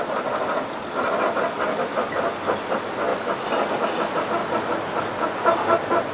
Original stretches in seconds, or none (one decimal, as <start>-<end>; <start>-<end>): 0.0-4.4; 5.0-6.1